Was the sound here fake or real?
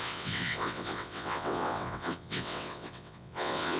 fake